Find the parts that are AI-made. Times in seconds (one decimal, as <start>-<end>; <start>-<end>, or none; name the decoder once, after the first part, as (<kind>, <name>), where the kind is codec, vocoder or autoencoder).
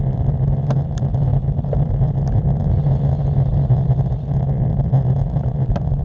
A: none